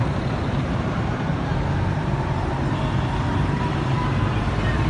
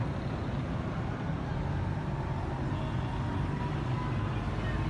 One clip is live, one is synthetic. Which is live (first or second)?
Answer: second